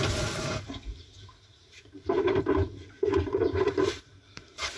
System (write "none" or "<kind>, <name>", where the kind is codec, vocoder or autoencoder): vocoder, BigVGAN v2